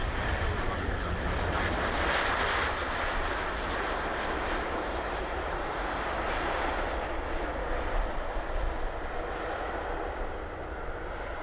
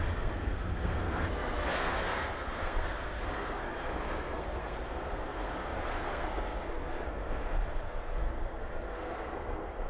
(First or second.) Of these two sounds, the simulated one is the second